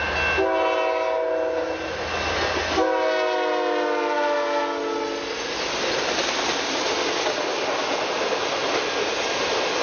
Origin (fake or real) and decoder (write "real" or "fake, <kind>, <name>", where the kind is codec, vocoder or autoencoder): real